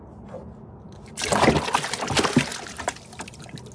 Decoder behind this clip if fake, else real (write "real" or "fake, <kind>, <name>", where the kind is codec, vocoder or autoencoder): real